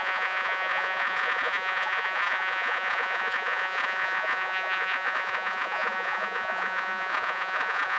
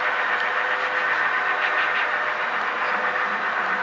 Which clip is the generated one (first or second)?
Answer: first